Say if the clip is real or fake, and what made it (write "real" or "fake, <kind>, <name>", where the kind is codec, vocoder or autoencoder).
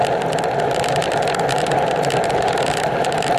real